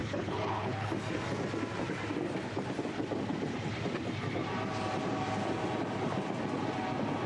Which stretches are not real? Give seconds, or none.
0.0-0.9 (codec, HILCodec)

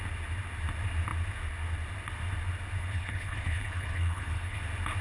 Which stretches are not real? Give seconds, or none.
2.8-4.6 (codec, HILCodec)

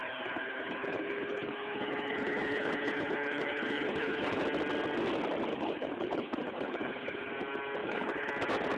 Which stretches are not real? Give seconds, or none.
0.0-4.4 (codec, HILCodec); 5.5-7.3; 7.8-8.3